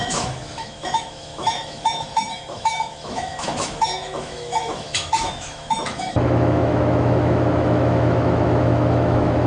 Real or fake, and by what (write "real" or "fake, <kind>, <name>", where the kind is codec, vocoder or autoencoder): fake, autoencoder, DAC-VAE